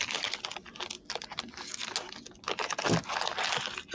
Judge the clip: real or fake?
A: real